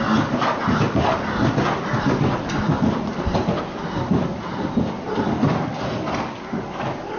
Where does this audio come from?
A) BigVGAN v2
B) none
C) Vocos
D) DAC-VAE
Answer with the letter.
B